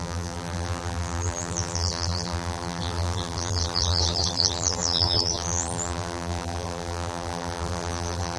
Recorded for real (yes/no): no